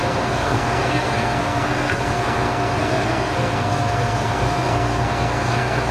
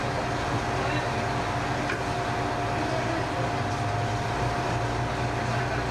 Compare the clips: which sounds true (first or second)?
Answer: second